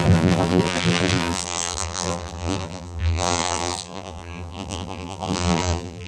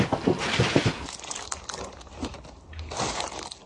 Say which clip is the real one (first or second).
second